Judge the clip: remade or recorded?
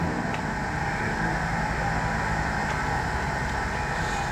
recorded